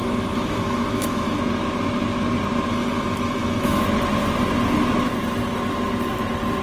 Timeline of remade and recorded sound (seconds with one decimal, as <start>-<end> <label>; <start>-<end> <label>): 0.0-1.4 remade; 1.4-2.7 recorded; 2.7-3.8 remade; 3.8-6.6 recorded